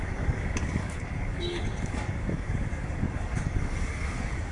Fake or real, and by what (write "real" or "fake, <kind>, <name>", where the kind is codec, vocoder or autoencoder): fake, codec, DAC